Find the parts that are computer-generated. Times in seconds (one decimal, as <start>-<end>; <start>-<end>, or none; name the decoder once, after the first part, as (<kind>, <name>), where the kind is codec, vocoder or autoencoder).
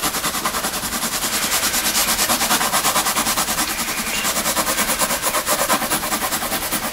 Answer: 0.0-1.4 (vocoder, BigVGAN v2); 2.0-6.1